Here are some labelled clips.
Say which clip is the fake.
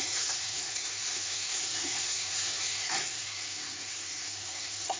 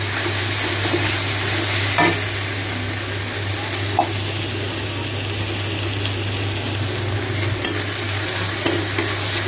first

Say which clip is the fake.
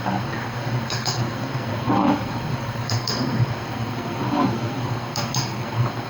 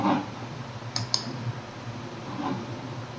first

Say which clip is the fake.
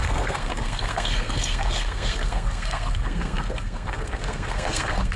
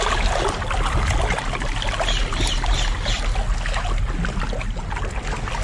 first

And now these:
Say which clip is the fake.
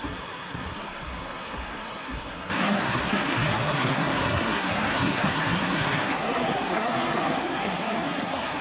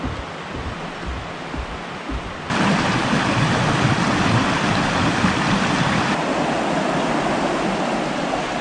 first